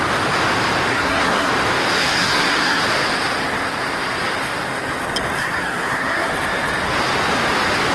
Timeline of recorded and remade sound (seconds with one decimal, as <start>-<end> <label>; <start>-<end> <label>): 0.0-0.9 recorded; 0.9-1.5 remade; 1.5-2.0 recorded; 2.0-2.8 remade; 2.8-5.4 recorded; 5.4-6.3 remade; 6.3-7.9 recorded